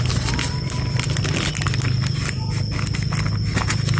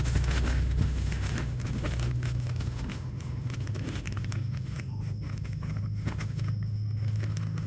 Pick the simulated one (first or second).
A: second